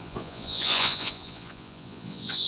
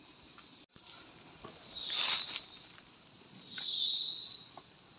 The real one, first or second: second